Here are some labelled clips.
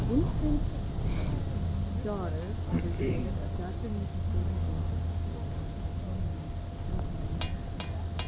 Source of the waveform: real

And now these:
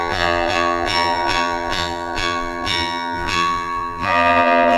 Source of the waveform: fake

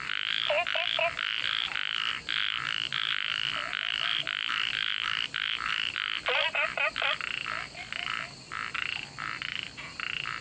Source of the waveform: real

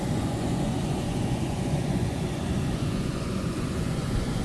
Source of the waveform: fake